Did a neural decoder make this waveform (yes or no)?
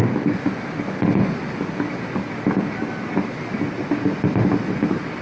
no